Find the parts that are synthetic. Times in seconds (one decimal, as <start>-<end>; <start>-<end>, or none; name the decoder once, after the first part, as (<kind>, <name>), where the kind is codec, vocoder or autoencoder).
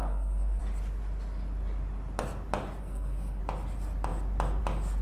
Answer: 0.0-0.6 (codec, SNAC); 2.8-3.4